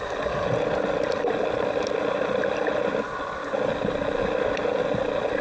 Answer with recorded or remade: recorded